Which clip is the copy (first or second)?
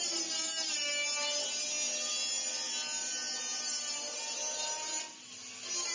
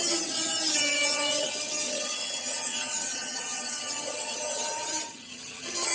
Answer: second